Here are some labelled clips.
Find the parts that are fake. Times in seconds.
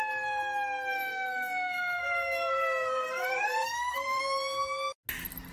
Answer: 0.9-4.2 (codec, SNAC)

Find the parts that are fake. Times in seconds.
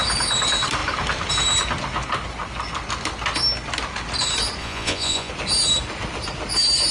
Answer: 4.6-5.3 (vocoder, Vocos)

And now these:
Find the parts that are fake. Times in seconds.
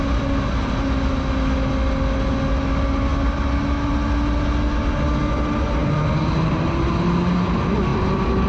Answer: 5.8-6.9 (vocoder, BigVGAN v2); 7.9-8.5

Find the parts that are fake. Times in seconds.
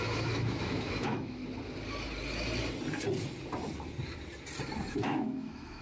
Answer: 0.0-1.4 (autoencoder, DAC-VAE); 4.9-5.8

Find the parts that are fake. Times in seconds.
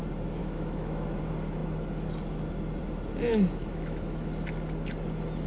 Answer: 0.4-1.2 (autoencoder, DAC-VAE); 3.6-4.3